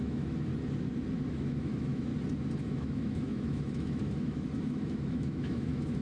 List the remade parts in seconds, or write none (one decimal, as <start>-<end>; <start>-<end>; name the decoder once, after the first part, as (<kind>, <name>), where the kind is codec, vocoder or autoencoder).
0.0-0.5 (autoencoder, DAC-VAE); 1.3-2.1; 2.6-6.0